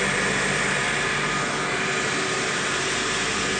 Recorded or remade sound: recorded